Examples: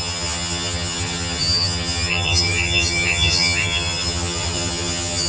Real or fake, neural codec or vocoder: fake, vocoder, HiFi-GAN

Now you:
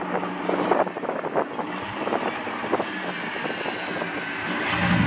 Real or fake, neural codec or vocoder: real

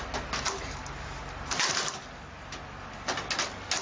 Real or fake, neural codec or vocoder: real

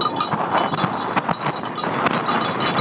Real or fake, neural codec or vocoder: real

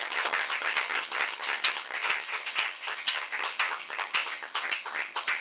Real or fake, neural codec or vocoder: fake, vocoder, HiFi-GAN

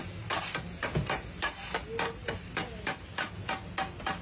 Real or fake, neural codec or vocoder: real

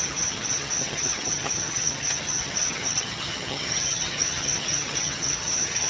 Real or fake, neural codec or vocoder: fake, vocoder, HiFi-GAN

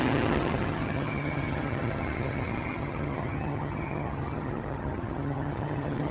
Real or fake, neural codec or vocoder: fake, vocoder, HiFi-GAN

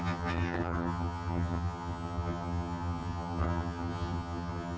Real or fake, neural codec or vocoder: fake, vocoder, HiFi-GAN